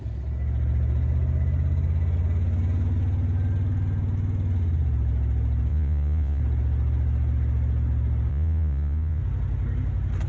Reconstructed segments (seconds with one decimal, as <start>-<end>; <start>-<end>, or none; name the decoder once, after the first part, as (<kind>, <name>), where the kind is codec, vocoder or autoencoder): 5.7-6.4 (vocoder, Vocos); 8.3-9.2